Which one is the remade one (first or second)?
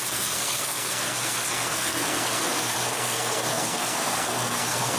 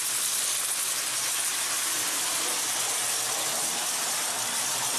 first